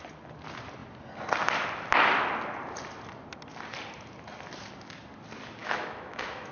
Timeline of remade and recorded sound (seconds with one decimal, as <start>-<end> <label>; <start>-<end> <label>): 0.0-5.6 recorded; 5.6-6.5 remade